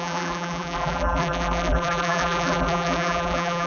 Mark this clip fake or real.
fake